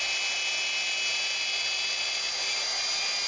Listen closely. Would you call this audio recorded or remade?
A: recorded